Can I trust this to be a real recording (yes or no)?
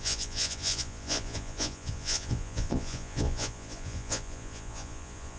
no